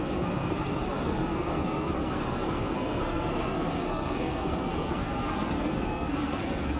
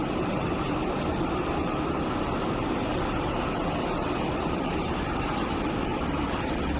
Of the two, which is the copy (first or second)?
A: first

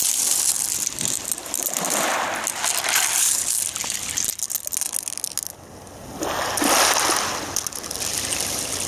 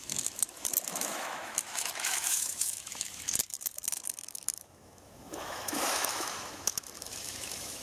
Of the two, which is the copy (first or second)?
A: second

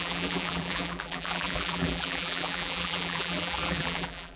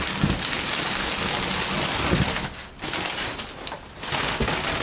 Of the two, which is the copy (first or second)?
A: first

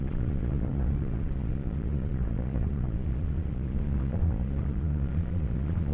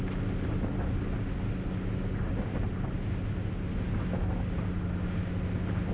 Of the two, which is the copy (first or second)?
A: first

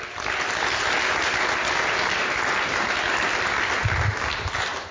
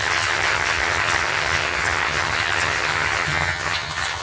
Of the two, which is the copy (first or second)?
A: second